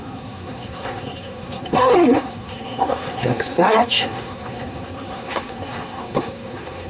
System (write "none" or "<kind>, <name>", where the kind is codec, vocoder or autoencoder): codec, SNAC